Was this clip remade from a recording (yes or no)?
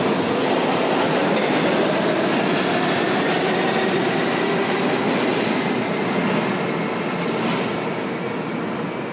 no